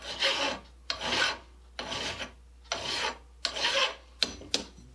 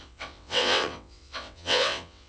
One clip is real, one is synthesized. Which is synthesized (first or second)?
second